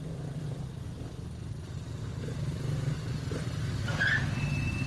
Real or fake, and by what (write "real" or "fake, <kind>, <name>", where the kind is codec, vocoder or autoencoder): real